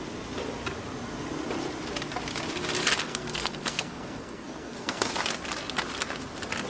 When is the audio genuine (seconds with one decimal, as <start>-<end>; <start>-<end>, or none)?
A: 0.0-3.0; 5.1-6.7